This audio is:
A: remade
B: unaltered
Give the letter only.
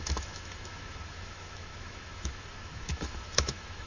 A